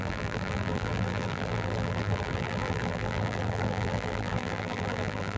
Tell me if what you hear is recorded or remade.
remade